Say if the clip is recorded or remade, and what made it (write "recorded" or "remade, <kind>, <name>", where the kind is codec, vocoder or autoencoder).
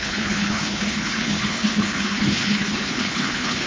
remade, codec, HILCodec